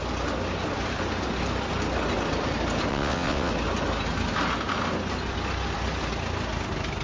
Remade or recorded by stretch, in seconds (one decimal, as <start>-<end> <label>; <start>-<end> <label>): 0.0-2.9 recorded; 2.9-3.5 remade; 3.5-7.0 recorded

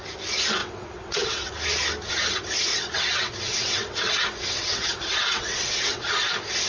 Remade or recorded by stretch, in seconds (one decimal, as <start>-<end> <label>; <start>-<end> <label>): 0.0-0.6 recorded; 0.6-1.5 remade; 1.5-2.7 recorded; 2.7-6.1 remade; 6.1-6.7 recorded

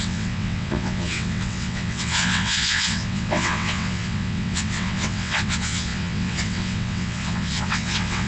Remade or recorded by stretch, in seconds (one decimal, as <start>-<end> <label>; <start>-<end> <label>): 0.0-8.3 remade

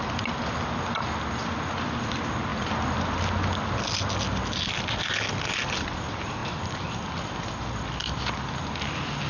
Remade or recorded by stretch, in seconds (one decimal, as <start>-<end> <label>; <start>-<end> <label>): 0.0-9.3 recorded